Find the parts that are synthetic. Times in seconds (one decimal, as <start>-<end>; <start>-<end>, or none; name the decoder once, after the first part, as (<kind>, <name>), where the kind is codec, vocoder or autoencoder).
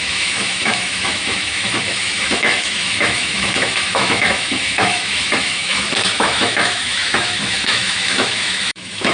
0.0-9.1 (autoencoder, DAC-VAE)